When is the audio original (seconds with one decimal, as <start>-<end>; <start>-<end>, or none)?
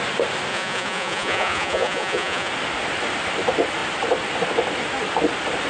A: 0.0-0.5; 2.5-5.7